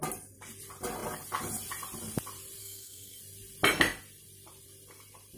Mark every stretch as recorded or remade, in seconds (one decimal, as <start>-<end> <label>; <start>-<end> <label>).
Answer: 0.0-2.6 recorded; 2.6-3.2 remade; 3.2-5.4 recorded